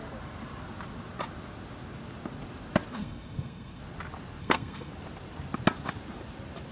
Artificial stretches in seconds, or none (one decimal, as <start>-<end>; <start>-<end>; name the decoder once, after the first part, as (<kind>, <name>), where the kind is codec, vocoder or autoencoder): 3.0-3.8 (codec, SNAC); 4.4-4.9